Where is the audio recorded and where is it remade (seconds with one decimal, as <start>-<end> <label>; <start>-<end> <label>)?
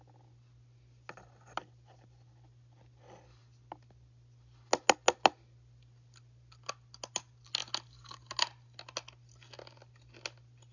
0.0-10.7 recorded